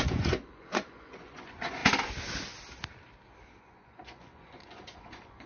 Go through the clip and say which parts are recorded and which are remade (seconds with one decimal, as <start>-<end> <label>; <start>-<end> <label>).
0.0-1.8 remade; 1.8-3.6 recorded; 3.6-5.5 remade